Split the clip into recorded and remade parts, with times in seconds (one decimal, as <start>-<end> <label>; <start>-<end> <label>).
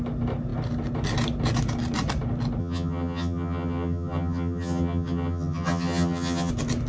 0.0-2.6 recorded; 2.6-6.5 remade; 6.5-6.9 recorded